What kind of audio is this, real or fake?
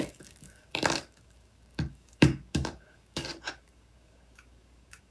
fake